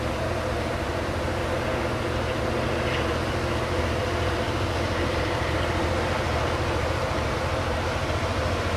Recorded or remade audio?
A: recorded